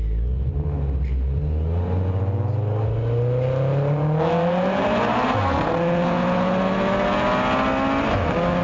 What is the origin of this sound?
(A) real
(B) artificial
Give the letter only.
A